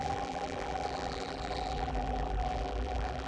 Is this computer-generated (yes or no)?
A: yes